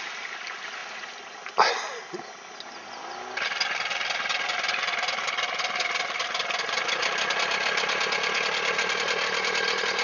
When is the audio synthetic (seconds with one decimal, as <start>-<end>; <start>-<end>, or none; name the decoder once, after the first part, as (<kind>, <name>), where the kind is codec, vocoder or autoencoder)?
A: none